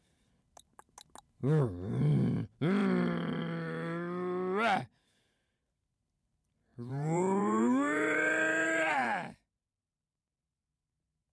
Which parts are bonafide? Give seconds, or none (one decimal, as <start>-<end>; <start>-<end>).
0.0-6.7; 9.5-11.3